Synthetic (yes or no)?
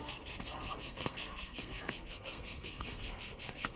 yes